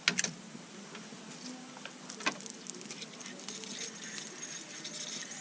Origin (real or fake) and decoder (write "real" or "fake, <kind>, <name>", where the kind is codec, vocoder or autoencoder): real